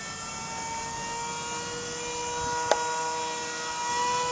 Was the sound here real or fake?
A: real